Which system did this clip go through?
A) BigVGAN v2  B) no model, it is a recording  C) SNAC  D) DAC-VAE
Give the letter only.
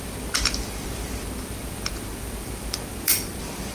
A